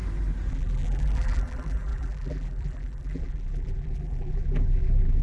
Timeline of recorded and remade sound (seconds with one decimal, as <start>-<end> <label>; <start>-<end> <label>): 0.0-0.5 recorded; 0.5-5.2 remade